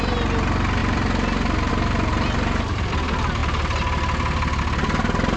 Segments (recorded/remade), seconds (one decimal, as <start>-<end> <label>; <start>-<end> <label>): 0.0-0.8 recorded; 0.8-1.7 remade; 1.7-2.1 recorded; 2.1-2.9 remade; 2.9-5.4 recorded